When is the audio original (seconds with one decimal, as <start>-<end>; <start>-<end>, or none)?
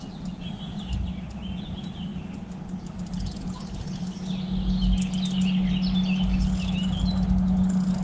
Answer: 0.0-8.0